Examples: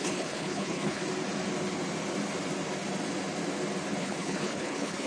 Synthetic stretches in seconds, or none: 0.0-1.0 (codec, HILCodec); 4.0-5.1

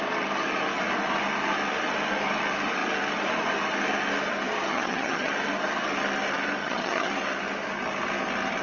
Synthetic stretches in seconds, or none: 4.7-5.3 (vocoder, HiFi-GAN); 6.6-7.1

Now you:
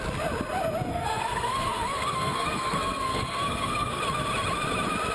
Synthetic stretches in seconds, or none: 0.9-4.0 (codec, SNAC)

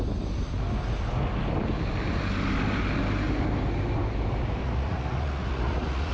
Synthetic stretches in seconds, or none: 4.6-6.1 (vocoder, Vocos)

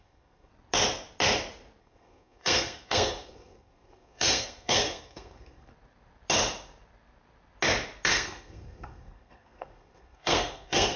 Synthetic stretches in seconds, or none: 0.0-0.5 (codec, SNAC); 1.8-5.7; 8.1-11.0